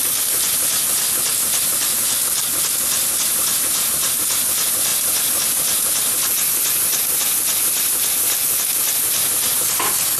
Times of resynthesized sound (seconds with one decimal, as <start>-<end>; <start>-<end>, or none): none

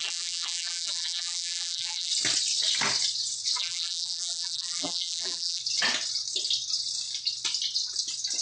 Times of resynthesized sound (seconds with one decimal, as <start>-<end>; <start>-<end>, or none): 0.0-2.1; 3.6-5.6

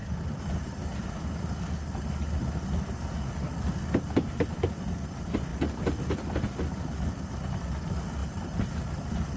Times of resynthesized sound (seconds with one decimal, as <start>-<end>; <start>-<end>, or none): 8.2-8.7

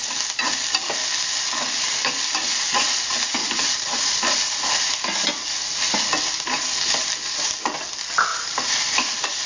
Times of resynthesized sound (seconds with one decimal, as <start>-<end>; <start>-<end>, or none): 3.4-4.9; 8.3-9.5

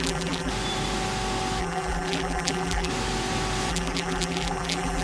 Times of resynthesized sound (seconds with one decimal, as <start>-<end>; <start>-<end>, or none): 0.0-0.5; 1.6-2.9; 3.7-5.0

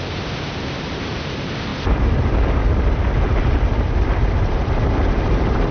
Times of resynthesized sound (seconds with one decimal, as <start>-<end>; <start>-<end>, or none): 0.0-5.7

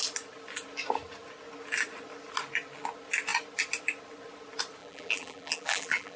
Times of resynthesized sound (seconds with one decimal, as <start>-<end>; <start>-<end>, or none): 4.8-6.2